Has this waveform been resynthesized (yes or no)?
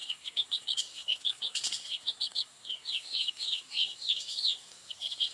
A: yes